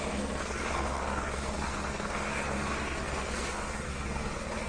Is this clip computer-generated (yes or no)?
yes